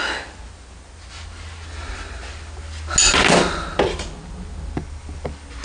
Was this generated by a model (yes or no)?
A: no